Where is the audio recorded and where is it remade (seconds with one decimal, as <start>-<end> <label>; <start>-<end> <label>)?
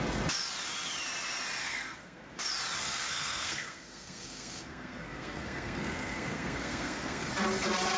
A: 0.0-1.6 recorded; 1.6-2.4 remade; 2.4-2.8 recorded; 2.8-7.3 remade; 7.3-8.0 recorded